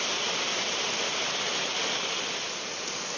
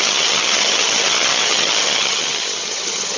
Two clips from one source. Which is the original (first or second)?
first